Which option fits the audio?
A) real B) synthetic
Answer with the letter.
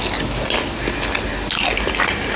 A